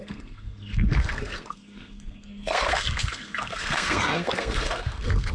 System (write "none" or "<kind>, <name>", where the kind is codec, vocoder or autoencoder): codec, SNAC